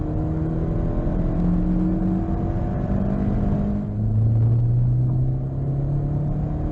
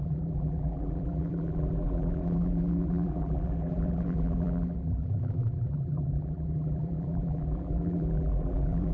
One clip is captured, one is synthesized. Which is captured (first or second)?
first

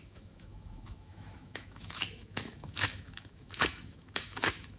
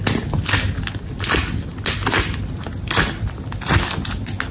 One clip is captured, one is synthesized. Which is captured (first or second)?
second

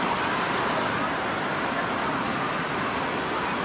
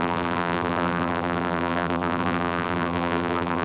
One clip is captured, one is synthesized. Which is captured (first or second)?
first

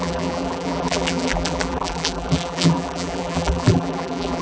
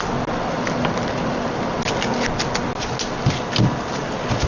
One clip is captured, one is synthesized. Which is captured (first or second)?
second